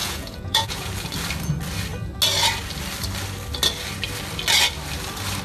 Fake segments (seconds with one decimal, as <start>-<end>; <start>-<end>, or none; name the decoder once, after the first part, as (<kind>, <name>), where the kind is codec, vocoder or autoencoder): 0.0-0.9 (vocoder, Vocos)